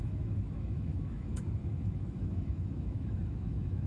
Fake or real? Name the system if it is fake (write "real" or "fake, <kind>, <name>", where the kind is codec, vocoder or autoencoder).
fake, autoencoder, DAC-VAE